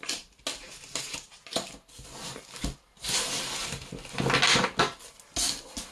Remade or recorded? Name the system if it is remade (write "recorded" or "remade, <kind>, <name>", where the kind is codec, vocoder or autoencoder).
recorded